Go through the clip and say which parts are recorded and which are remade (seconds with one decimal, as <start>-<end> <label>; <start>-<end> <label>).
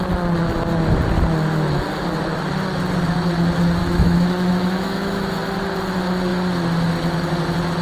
0.0-3.8 recorded; 3.8-5.3 remade; 5.3-7.8 recorded